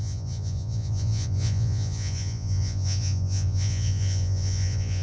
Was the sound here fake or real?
fake